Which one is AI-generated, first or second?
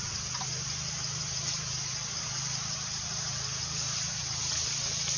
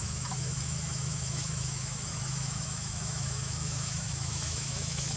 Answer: second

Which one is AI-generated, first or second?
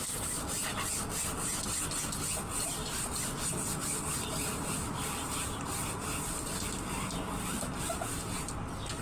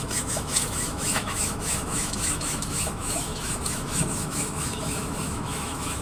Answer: second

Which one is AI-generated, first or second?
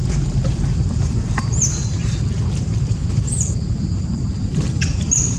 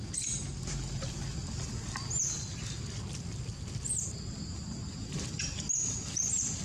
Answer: first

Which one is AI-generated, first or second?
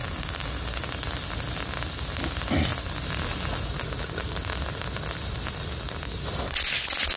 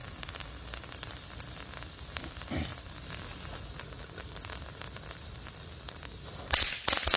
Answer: second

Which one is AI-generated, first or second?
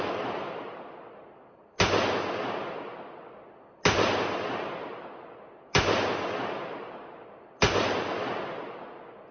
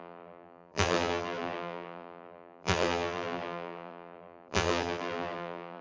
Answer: second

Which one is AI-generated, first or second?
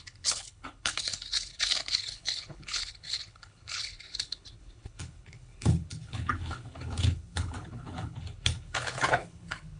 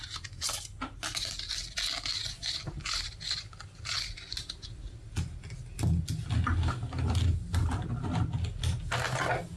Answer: first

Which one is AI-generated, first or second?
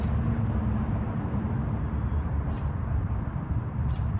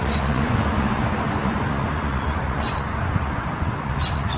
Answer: second